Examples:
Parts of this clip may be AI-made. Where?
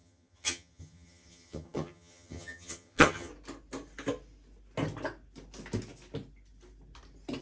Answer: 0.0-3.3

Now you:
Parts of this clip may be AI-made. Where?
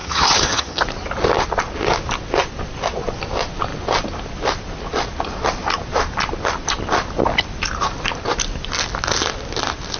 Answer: 0.0-0.8